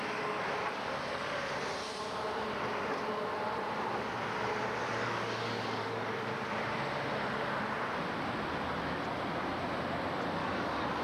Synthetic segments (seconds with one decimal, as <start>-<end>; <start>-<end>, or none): 4.8-6.4; 10.4-11.0